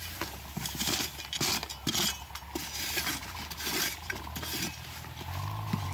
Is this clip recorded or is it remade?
recorded